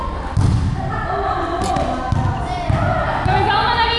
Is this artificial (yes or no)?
no